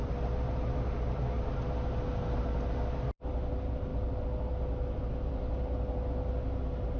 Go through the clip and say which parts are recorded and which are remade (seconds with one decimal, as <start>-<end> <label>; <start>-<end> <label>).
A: 0.0-7.0 recorded